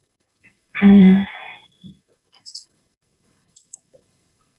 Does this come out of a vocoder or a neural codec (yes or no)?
yes